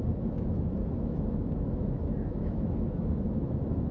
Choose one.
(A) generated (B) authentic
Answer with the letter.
A